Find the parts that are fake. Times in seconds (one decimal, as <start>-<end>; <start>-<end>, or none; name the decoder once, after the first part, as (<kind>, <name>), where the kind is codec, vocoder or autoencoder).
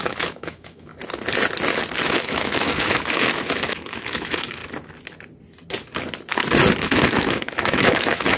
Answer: 0.0-0.9 (autoencoder, DAC-VAE); 2.0-4.6; 6.8-8.4